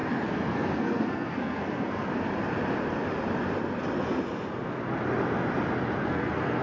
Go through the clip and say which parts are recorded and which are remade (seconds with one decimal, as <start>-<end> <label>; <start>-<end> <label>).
0.0-2.1 remade; 2.1-6.0 recorded; 6.0-6.6 remade